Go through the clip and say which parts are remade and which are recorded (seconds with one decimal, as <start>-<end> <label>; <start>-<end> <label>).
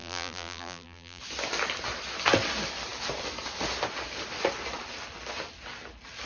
0.0-1.2 remade; 1.2-6.3 recorded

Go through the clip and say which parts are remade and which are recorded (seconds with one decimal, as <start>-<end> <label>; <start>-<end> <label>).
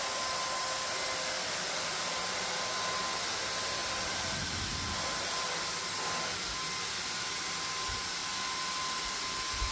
0.0-3.8 recorded; 3.8-4.7 remade; 4.7-9.7 recorded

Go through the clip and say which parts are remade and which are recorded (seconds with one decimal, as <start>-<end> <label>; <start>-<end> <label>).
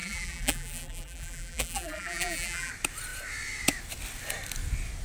0.0-2.7 remade; 2.7-5.0 recorded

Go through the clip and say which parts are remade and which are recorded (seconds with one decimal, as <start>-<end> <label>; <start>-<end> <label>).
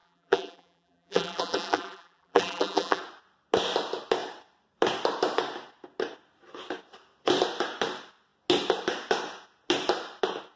0.0-3.0 remade; 3.0-10.6 recorded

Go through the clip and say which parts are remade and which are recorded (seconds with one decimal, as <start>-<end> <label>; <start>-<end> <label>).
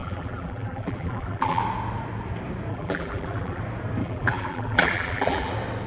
0.0-1.6 remade; 1.6-2.7 recorded; 2.7-3.6 remade; 3.6-4.0 recorded; 4.0-5.5 remade; 5.5-5.9 recorded